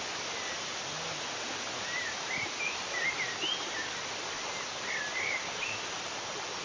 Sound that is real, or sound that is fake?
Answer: real